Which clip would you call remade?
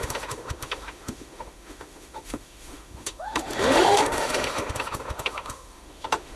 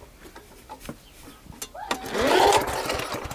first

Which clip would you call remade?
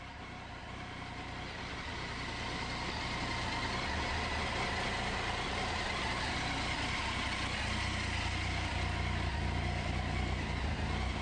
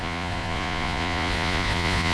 second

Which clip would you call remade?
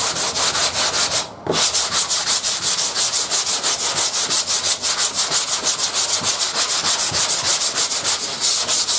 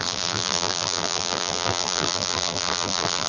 second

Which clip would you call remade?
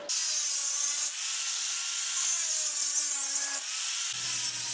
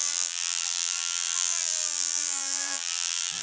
second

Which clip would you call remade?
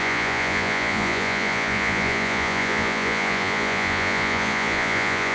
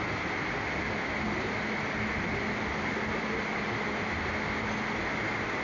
first